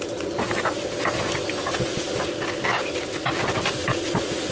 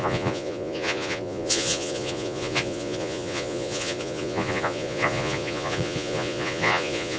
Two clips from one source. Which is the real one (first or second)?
first